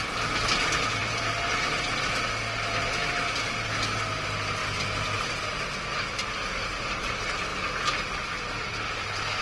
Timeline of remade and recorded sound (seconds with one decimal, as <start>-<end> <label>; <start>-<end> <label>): 0.0-1.0 recorded; 1.0-1.5 remade; 1.5-9.4 recorded